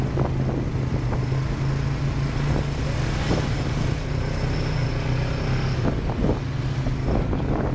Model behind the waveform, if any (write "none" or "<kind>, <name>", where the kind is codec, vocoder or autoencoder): none